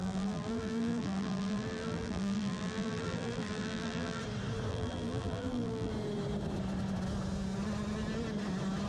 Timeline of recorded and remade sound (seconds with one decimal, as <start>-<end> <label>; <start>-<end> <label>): 0.0-4.2 remade; 4.2-4.7 recorded; 4.7-5.9 remade; 5.9-8.9 recorded